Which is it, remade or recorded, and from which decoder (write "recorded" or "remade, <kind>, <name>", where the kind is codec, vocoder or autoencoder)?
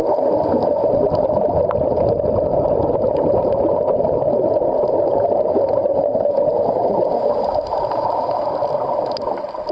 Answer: recorded